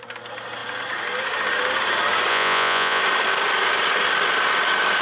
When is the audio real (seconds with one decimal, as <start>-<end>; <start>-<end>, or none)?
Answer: 0.0-2.3; 3.0-5.0